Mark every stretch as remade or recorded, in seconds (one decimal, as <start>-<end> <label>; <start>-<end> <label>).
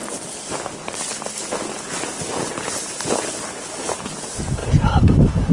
0.0-2.4 recorded; 2.4-5.5 remade